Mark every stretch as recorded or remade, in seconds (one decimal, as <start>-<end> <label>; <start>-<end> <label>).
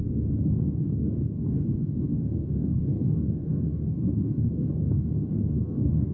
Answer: 0.0-6.1 remade